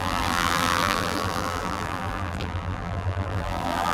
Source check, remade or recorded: remade